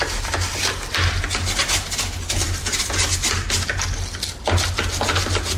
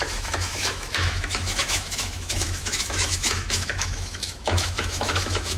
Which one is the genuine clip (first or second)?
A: first